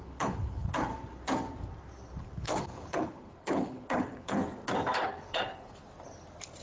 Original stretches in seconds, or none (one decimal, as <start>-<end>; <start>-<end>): 0.9-2.2; 4.4-5.0; 5.8-6.6